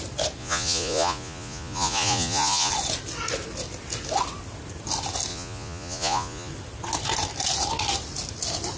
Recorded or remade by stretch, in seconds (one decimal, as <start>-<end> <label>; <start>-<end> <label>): 0.0-0.4 recorded; 0.4-2.7 remade; 2.7-5.3 recorded; 5.3-6.5 remade; 6.5-8.8 recorded